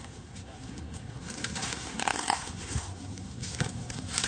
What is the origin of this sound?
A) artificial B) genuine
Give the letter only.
A